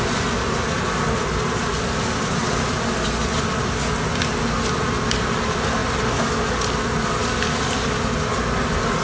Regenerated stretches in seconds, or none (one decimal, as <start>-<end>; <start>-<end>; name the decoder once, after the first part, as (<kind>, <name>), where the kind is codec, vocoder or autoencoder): none